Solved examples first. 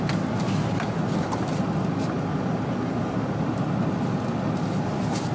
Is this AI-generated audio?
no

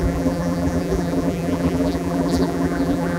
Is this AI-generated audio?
yes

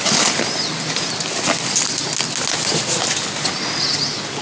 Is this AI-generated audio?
no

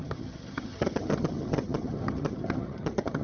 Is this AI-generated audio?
yes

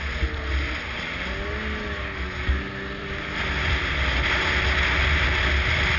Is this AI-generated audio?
no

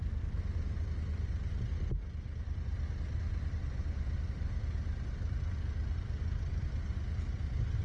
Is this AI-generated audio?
no